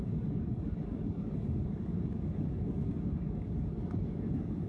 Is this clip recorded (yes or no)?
no